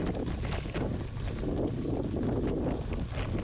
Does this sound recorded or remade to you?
recorded